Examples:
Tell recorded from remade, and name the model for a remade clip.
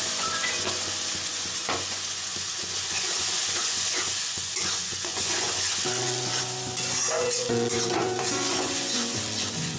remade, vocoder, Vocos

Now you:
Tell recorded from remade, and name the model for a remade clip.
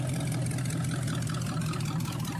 recorded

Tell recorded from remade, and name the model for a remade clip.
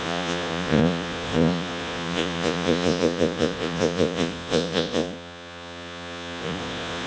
remade, vocoder, Vocos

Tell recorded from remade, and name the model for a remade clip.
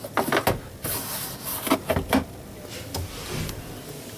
recorded